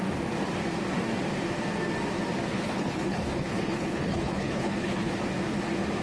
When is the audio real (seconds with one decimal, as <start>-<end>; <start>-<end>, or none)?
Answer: 0.0-2.5; 5.1-6.0